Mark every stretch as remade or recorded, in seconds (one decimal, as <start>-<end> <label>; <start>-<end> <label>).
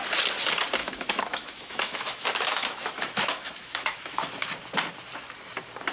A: 0.0-0.8 recorded; 0.8-4.3 remade; 4.3-5.9 recorded